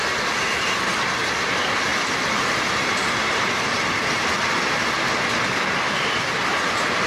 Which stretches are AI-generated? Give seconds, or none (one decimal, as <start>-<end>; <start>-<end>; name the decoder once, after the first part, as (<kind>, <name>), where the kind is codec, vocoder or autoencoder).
0.0-0.9 (vocoder, BigVGAN v2); 1.5-1.9; 6.2-7.1